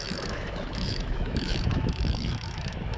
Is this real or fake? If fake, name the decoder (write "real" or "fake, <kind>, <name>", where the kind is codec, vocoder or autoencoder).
fake, autoencoder, DAC-VAE